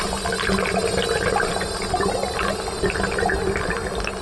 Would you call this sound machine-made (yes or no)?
no